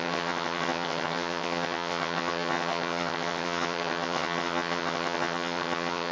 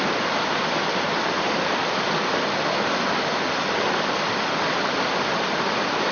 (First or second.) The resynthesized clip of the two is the first